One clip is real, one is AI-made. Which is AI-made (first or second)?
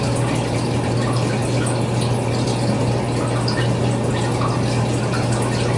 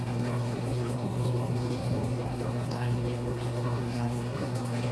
second